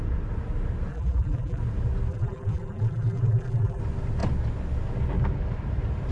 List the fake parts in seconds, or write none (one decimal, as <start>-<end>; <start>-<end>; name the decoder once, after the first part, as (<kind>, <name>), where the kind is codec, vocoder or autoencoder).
0.9-1.6 (vocoder, BigVGAN v2); 2.1-3.8